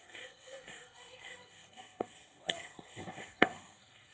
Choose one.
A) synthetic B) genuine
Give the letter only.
A